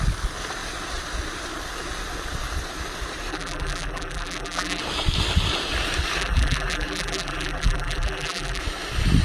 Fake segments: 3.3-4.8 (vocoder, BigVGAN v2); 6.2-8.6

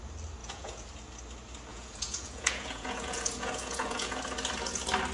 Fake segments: 0.4-0.9 (vocoder, Vocos); 1.7-4.2

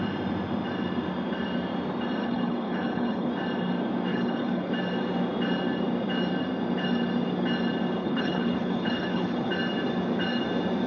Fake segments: 2.2-3.3 (codec, HILCodec); 4.1-4.7; 8.0-9.5

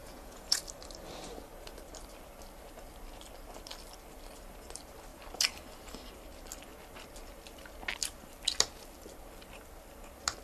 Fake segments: 0.0-0.6 (vocoder, Vocos)

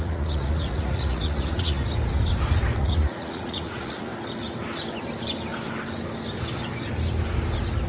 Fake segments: 0.0-1.8 (vocoder, Vocos); 2.8-4.1